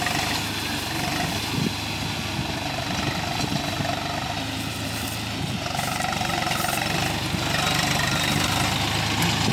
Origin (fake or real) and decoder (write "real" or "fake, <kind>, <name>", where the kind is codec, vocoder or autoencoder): real